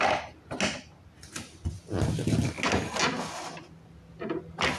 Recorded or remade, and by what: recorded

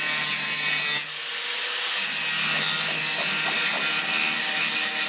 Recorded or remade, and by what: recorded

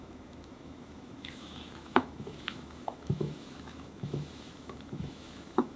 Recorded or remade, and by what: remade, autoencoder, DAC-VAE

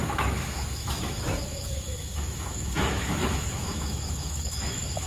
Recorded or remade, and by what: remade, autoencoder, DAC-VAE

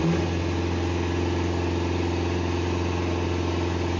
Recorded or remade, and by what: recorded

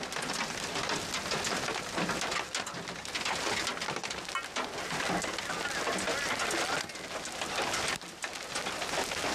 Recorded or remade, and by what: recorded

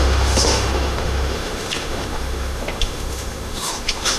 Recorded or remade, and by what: remade, autoencoder, DAC-VAE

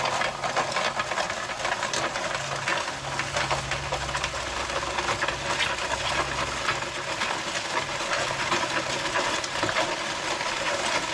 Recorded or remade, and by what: recorded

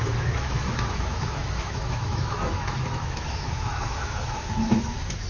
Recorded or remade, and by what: remade, autoencoder, DAC-VAE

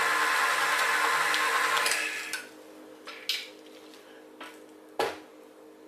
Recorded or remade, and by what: recorded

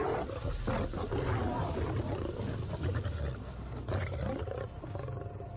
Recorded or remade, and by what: recorded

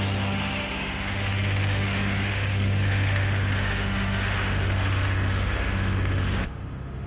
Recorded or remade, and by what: remade, autoencoder, DAC-VAE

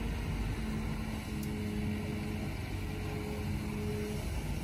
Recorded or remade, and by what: recorded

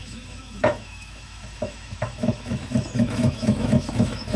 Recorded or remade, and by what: remade, autoencoder, DAC-VAE